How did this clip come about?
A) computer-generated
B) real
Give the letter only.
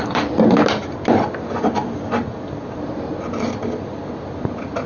B